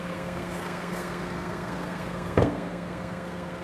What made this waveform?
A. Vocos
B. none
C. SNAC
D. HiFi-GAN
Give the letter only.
C